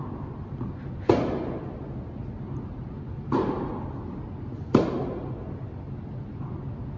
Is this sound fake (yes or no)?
no